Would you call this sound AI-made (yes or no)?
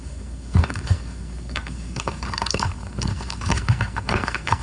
yes